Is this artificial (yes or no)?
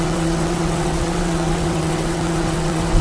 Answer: yes